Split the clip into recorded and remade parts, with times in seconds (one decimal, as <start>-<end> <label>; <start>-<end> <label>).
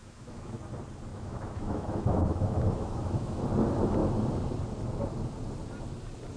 0.0-0.6 remade; 0.6-1.1 recorded; 1.1-3.4 remade; 3.4-6.4 recorded